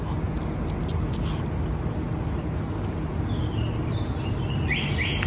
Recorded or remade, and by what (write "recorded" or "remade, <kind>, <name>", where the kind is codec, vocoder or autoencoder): recorded